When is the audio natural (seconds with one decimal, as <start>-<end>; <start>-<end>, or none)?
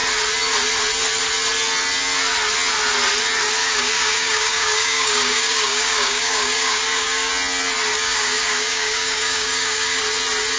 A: 0.0-3.6; 7.3-7.9; 10.0-10.6